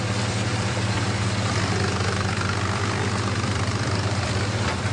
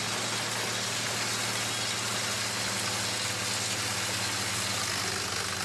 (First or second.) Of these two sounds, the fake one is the first